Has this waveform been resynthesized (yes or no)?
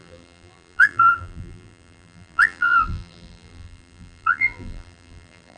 yes